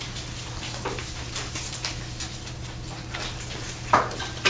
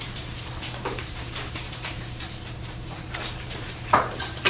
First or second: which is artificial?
second